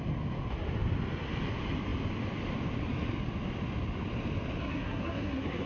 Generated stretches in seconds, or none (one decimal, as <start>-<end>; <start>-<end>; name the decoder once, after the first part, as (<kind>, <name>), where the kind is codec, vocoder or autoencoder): 4.6-5.7 (codec, SNAC)